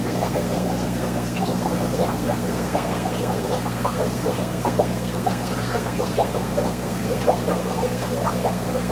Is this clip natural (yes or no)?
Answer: no